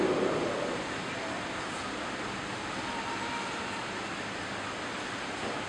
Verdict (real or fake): real